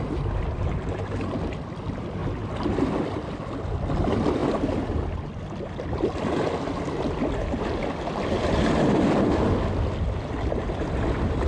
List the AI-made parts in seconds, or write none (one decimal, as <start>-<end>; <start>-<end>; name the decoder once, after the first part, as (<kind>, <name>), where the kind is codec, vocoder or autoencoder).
2.2-2.9 (vocoder, BigVGAN v2)